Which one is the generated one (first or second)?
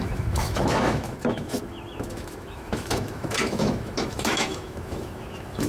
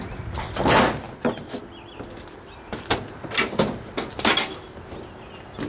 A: first